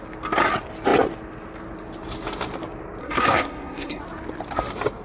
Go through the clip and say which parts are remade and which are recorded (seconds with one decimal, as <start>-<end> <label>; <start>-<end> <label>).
0.0-3.0 recorded; 3.0-4.0 remade; 4.0-5.0 recorded